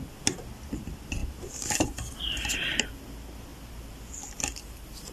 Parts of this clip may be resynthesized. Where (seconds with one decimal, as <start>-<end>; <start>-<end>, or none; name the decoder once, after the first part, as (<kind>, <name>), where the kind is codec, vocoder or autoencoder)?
1.2-2.9 (vocoder, BigVGAN v2)